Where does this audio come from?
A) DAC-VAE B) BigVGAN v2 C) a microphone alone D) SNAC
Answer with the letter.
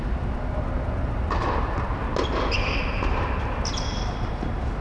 C